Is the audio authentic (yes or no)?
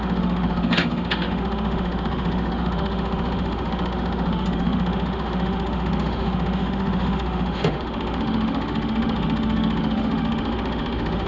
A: no